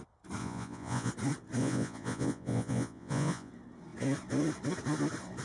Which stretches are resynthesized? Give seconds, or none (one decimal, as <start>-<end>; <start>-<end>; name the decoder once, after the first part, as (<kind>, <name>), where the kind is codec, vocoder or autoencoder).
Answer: 0.4-1.1 (vocoder, Vocos); 1.6-3.5